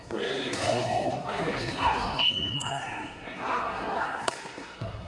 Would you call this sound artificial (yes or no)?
yes